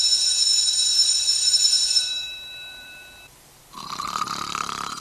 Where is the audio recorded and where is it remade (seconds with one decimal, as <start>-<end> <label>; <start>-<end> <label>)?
0.0-0.9 recorded; 0.9-3.6 remade; 3.6-5.0 recorded